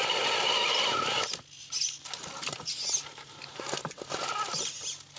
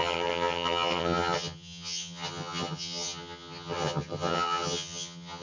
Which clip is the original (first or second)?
first